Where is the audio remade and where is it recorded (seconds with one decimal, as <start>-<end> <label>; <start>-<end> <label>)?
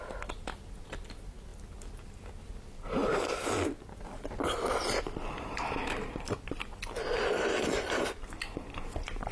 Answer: 0.0-9.3 recorded